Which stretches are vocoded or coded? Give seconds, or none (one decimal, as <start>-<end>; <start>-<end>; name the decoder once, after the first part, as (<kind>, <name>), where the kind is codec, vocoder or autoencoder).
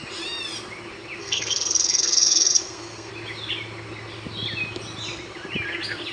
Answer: 1.2-3.1 (codec, SNAC)